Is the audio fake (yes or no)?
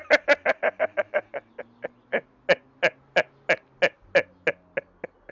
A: no